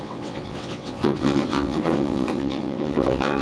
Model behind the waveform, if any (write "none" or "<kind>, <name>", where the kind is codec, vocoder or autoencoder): vocoder, WaveNeXt